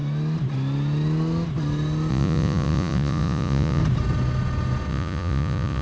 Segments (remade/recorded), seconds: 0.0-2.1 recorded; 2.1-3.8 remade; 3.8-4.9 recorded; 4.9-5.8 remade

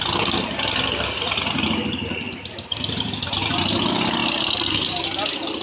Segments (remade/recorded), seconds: 0.0-5.6 recorded

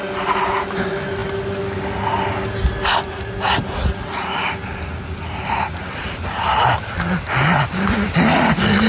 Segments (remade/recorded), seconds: 0.0-8.9 recorded

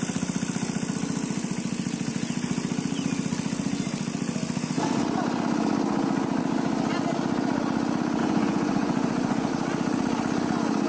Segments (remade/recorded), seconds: 0.0-8.2 recorded; 8.2-9.5 remade; 9.5-10.9 recorded

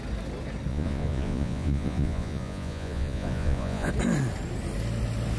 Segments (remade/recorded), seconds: 0.0-0.7 recorded; 0.7-3.9 remade; 3.9-5.4 recorded

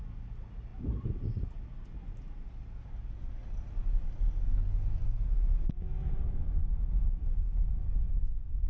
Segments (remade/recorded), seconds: 0.0-6.7 recorded; 6.7-7.5 remade; 7.5-8.7 recorded

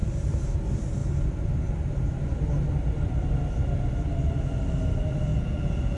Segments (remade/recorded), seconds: 0.0-5.3 recorded; 5.3-6.0 remade

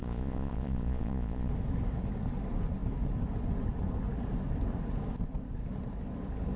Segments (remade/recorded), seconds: 0.0-1.5 remade; 1.5-6.6 recorded